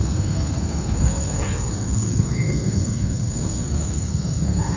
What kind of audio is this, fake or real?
fake